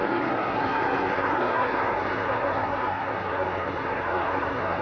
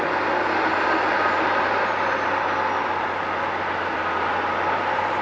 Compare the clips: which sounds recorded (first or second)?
second